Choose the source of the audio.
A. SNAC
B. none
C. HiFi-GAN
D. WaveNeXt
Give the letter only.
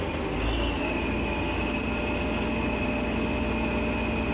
B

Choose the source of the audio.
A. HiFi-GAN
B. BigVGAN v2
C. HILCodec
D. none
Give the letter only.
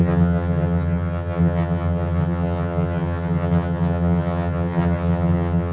A